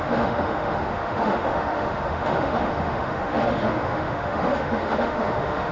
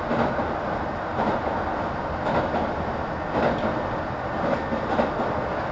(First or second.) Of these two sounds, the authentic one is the second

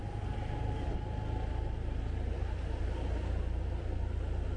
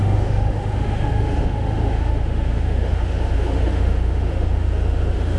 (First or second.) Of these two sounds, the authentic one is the first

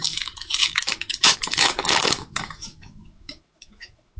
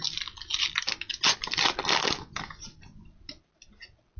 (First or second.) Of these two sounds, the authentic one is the second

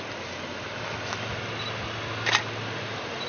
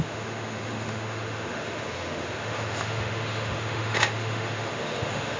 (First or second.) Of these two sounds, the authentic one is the first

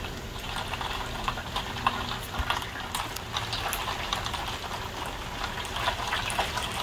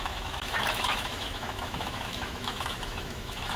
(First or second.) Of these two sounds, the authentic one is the first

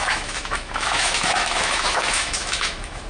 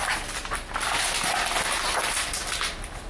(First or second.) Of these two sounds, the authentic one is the second